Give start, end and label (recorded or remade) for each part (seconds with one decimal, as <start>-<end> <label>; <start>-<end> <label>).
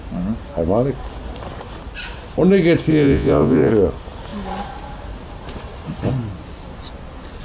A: 0.0-2.9 recorded; 2.9-3.7 remade; 3.7-7.4 recorded